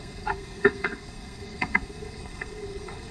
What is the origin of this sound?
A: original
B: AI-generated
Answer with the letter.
B